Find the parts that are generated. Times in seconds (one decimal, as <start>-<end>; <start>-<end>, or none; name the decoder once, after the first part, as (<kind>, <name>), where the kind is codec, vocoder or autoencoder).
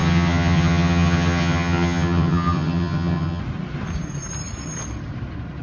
0.0-3.4 (vocoder, HiFi-GAN)